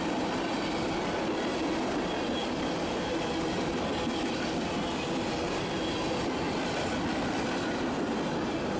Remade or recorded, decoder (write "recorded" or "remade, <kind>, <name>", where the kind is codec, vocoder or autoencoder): recorded